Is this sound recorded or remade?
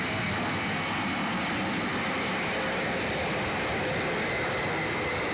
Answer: recorded